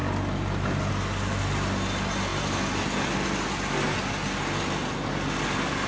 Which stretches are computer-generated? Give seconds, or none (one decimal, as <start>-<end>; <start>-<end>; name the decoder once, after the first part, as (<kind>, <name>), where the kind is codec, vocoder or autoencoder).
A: none